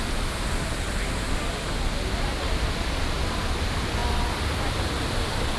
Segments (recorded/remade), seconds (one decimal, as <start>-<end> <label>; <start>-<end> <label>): 0.0-5.6 recorded